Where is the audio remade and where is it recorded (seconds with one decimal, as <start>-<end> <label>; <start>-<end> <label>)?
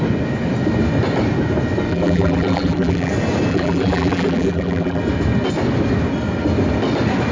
0.0-1.9 recorded; 1.9-3.1 remade; 3.1-3.5 recorded; 3.5-5.0 remade; 5.0-7.3 recorded